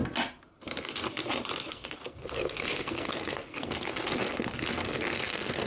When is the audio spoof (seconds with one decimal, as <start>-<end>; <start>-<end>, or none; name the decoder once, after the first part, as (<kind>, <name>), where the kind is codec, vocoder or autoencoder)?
1.7-5.7 (codec, SNAC)